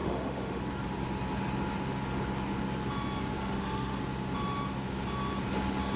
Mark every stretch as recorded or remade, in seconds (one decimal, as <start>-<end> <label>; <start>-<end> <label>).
0.0-0.6 remade; 0.6-3.4 recorded; 3.4-4.0 remade; 4.0-6.0 recorded